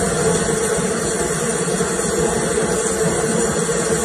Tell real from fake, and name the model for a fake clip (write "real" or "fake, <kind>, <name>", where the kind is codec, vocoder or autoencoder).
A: real